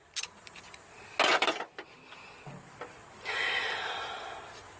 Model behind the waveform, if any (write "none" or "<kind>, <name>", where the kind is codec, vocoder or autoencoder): none